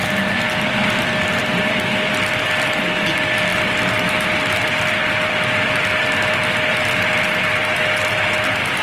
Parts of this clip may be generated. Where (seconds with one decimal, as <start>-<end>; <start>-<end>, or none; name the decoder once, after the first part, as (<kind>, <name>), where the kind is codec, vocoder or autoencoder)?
none

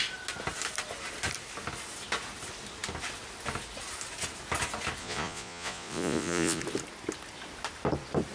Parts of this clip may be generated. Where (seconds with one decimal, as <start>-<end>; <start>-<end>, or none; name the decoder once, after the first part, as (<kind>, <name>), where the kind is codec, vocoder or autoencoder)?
5.0-6.6 (vocoder, Vocos)

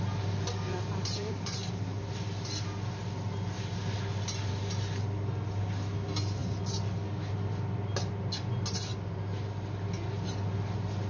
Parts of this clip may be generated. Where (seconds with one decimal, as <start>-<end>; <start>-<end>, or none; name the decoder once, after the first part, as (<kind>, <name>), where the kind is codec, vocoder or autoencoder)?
none

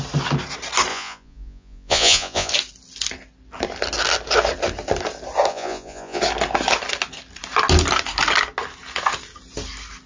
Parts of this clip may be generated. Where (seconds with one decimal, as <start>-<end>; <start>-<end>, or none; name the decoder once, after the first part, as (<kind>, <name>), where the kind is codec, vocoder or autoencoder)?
0.9-2.5 (vocoder, Vocos); 5.5-6.2

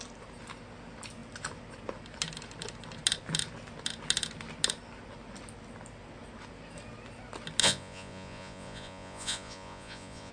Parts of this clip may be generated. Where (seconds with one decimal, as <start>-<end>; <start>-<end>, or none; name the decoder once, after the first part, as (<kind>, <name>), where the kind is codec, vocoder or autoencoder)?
7.6-10.3 (vocoder, Vocos)

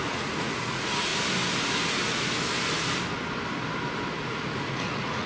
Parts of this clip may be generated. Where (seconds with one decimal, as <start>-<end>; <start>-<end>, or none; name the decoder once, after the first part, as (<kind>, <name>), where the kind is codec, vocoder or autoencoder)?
0.0-1.1 (vocoder, Vocos); 4.3-5.3

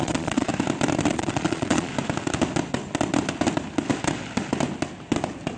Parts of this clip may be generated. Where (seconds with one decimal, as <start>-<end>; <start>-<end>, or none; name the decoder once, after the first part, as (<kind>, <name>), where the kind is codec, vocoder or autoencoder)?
0.0-0.5 (vocoder, Vocos); 1.1-1.9

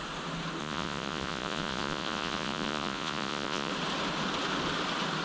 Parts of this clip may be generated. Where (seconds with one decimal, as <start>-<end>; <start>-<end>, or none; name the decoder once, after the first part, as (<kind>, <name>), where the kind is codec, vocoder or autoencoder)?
0.6-3.7 (vocoder, Vocos)